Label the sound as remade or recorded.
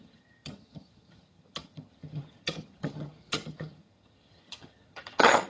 remade